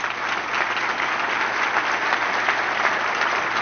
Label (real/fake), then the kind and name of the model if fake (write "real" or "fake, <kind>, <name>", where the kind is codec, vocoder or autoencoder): real